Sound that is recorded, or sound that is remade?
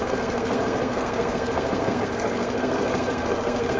remade